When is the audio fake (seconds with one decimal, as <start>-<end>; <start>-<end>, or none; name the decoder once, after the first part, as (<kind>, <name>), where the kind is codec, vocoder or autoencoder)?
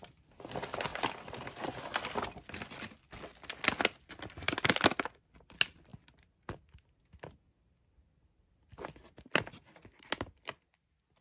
none